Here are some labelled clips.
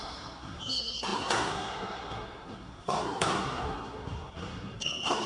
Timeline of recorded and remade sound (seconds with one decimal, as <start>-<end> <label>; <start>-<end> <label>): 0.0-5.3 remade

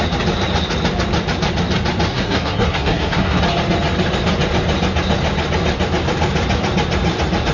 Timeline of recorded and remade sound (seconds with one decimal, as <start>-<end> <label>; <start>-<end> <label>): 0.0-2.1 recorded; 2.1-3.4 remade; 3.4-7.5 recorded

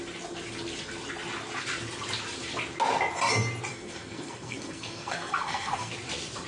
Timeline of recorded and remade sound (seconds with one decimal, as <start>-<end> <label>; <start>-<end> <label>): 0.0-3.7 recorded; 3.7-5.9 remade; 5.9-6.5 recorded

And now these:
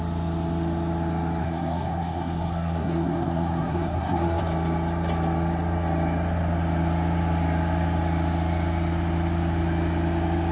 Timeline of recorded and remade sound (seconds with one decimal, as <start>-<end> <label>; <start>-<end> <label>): 0.0-1.4 recorded; 1.4-4.4 remade; 4.4-10.5 recorded

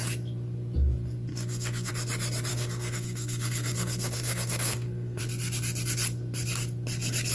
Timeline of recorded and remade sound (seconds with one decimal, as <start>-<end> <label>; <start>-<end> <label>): 0.0-1.3 recorded; 1.3-1.9 remade; 1.9-2.5 recorded; 2.5-5.2 remade; 5.2-7.3 recorded